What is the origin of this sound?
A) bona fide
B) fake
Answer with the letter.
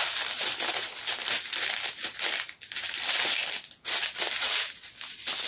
A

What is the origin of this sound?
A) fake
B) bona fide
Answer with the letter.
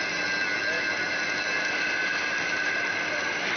B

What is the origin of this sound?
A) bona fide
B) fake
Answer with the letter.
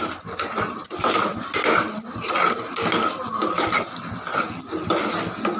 A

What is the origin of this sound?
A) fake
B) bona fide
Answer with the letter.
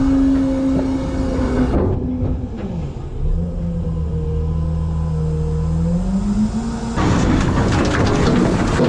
B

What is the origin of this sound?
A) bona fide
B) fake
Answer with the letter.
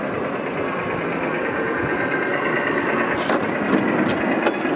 A